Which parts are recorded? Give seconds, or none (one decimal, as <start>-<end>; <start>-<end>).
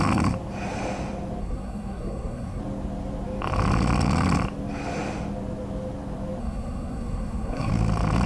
0.0-1.4; 2.6-6.4; 7.7-8.3